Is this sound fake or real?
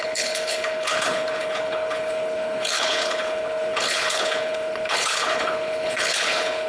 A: fake